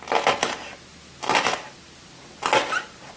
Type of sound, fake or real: real